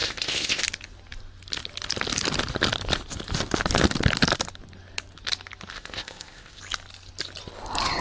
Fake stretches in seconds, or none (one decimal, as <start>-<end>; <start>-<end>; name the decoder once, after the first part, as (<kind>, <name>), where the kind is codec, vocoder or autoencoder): 0.0-0.6 (codec, ZipCodec); 5.7-6.6